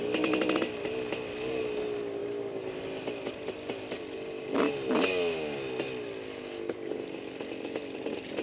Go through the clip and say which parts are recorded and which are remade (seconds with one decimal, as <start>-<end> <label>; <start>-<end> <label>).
0.0-8.4 recorded